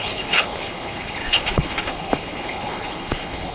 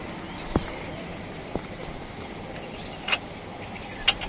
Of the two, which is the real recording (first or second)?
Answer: second